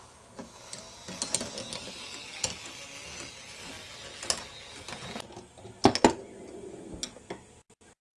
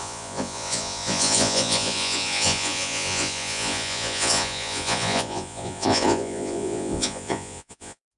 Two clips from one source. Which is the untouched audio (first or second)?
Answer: first